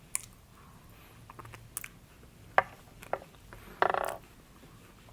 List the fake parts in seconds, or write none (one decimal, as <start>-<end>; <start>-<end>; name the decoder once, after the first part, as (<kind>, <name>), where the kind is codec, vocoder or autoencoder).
none